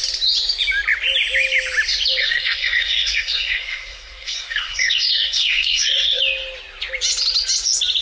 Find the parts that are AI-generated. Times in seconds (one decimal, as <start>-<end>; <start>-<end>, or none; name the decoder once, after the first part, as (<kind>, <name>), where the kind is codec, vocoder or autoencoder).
2.2-6.2 (codec, SNAC)